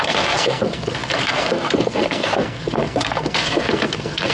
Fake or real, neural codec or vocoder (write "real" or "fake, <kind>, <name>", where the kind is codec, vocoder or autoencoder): fake, codec, SNAC